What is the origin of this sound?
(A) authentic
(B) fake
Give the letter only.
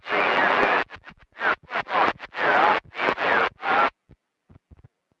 B